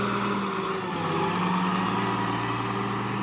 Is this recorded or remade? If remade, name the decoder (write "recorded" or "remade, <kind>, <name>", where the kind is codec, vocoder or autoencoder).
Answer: recorded